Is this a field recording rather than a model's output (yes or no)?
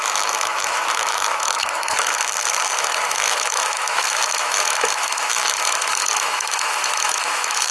no